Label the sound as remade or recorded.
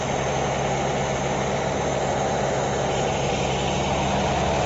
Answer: recorded